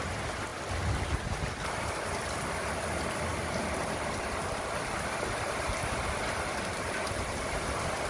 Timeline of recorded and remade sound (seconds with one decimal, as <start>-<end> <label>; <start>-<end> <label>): 0.0-3.3 recorded; 3.3-8.1 remade